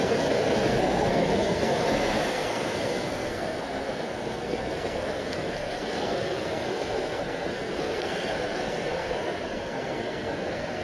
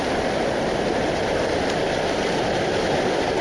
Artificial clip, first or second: first